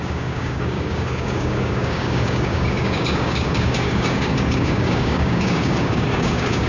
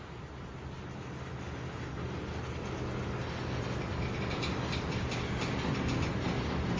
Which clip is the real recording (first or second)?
second